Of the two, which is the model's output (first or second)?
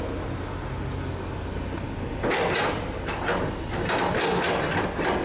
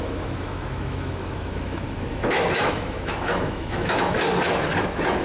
second